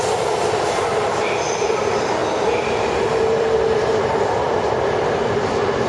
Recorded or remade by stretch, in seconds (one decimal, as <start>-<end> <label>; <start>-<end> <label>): 0.0-5.9 remade